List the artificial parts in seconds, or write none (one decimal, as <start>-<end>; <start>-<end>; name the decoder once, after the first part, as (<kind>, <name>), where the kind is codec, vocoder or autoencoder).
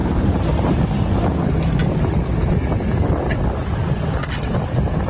0.0-0.5 (vocoder, BigVGAN v2)